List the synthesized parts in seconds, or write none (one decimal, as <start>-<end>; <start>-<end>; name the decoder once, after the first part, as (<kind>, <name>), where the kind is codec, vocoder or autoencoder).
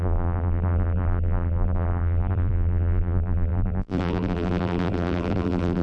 0.0-5.8 (vocoder, BigVGAN v2)